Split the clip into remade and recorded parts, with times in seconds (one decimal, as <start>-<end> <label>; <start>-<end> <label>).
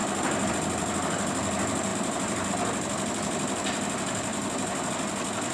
0.0-1.9 recorded; 1.9-2.5 remade; 2.5-4.3 recorded; 4.3-4.9 remade; 4.9-5.5 recorded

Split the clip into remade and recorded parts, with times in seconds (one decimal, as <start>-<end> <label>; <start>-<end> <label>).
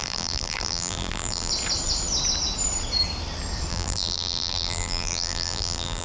0.0-1.5 remade; 1.5-3.7 recorded; 3.7-6.0 remade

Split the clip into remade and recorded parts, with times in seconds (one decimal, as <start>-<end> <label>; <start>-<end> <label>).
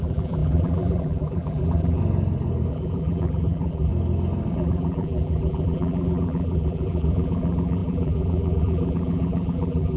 0.0-2.0 remade; 2.0-2.7 recorded; 2.7-3.9 remade; 3.9-4.5 recorded; 4.5-10.0 remade